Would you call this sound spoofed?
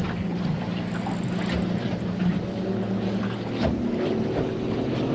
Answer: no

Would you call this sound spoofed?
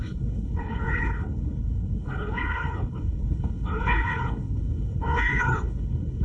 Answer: yes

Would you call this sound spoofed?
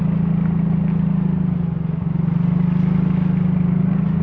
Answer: no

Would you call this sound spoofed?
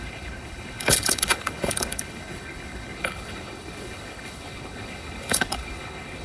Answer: yes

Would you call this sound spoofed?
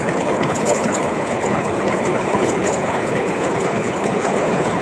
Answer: yes